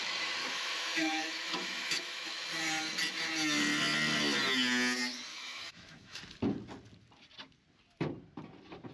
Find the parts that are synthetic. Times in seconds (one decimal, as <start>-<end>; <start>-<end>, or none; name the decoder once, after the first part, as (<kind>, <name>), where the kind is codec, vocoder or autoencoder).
0.4-2.3 (autoencoder, DAC-VAE); 5.3-6.2